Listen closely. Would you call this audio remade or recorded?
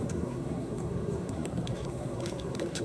remade